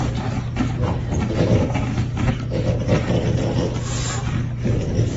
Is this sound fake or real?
real